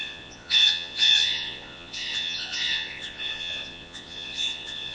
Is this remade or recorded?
remade